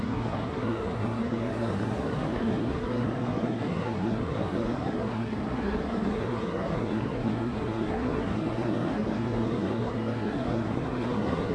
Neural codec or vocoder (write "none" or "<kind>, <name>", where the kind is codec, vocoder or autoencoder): codec, SNAC